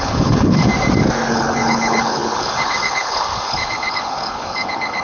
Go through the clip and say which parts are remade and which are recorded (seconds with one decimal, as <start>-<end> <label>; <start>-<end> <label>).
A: 0.0-0.7 remade; 0.7-1.3 recorded; 1.3-5.0 remade

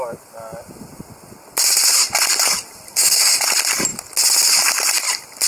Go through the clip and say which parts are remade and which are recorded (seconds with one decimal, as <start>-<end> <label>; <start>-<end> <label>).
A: 0.0-2.9 recorded; 2.9-3.4 remade; 3.4-5.5 recorded

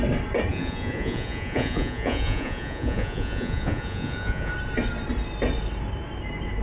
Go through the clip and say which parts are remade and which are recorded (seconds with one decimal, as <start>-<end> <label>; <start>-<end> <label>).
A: 0.0-0.5 recorded; 0.5-4.5 remade; 4.5-6.6 recorded